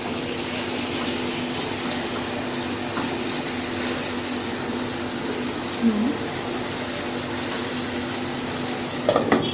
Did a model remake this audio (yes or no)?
no